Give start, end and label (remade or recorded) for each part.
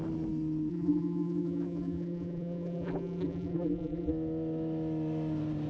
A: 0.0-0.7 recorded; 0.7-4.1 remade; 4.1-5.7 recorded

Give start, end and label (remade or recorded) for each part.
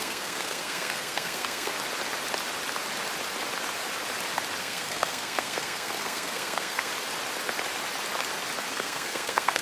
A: 0.0-1.7 remade; 1.7-4.6 recorded; 4.6-6.9 remade; 6.9-8.7 recorded; 8.7-9.6 remade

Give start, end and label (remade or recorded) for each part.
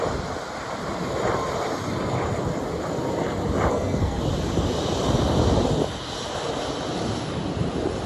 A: 0.0-3.7 recorded; 3.7-4.2 remade; 4.2-8.1 recorded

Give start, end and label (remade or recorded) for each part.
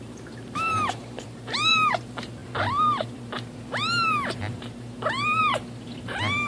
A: 0.0-6.5 remade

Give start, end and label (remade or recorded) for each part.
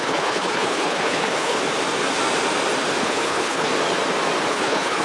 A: 0.0-1.6 remade; 1.6-3.0 recorded; 3.0-3.7 remade; 3.7-4.5 recorded; 4.5-5.0 remade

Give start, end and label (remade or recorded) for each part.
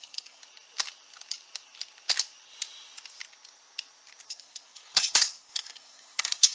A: 0.0-0.4 remade; 0.4-4.3 recorded; 4.3-6.5 remade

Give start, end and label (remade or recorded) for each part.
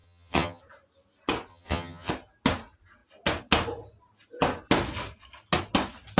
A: 0.0-0.6 remade; 0.6-1.5 recorded; 1.5-2.1 remade; 2.1-6.2 recorded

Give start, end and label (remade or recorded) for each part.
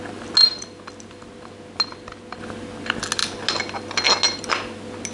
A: 0.0-5.1 recorded